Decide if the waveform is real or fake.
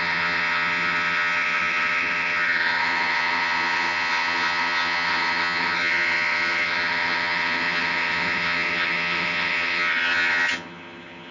fake